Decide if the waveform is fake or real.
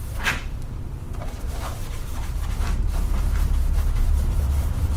fake